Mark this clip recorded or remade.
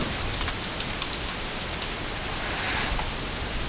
recorded